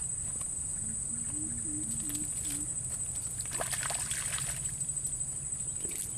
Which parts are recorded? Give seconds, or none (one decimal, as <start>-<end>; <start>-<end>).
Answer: 0.0-6.2